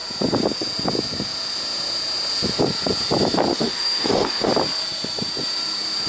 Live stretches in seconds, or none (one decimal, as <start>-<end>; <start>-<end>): 0.0-3.5; 4.5-6.1